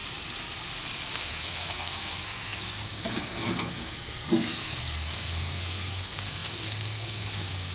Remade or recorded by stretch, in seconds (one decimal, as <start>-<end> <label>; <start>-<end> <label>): 0.0-1.2 recorded; 1.2-7.7 remade